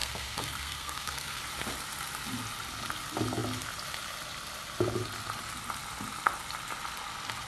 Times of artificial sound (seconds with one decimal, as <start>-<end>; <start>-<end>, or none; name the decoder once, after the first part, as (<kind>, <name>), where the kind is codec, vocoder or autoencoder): 0.0-1.4 (codec, SNAC)